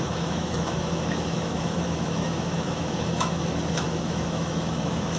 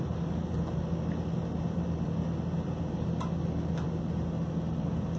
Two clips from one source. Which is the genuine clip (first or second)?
second